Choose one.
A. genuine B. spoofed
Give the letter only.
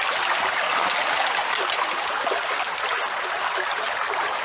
A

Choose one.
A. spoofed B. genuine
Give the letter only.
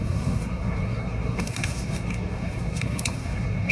A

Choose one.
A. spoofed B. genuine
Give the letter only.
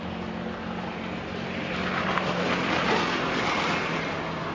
B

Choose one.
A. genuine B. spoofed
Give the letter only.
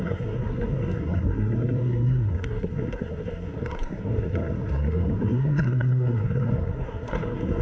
B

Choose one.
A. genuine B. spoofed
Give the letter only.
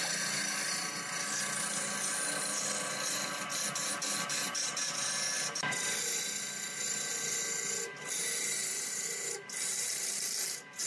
A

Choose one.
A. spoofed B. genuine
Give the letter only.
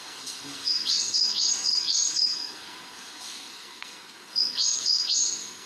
A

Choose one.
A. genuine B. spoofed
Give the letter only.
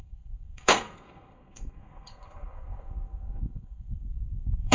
B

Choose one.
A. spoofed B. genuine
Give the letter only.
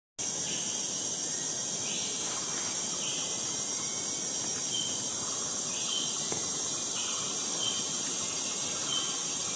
B